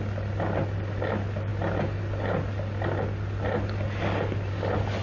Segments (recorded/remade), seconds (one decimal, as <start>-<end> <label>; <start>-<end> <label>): 0.0-5.0 recorded